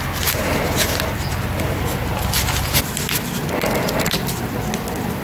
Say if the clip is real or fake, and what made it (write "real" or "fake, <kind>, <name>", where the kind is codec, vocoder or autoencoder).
real